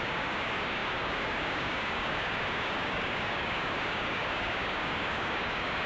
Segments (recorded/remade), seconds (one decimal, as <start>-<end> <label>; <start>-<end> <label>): 0.0-5.9 remade